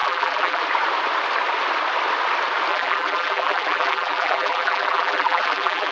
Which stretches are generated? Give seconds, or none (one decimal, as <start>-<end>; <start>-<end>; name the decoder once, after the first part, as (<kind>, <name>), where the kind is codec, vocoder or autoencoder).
0.0-0.6 (vocoder, BigVGAN v2); 2.7-5.9